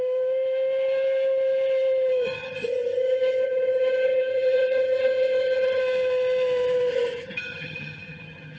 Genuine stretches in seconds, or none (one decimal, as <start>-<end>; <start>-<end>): 0.0-2.4; 5.8-6.9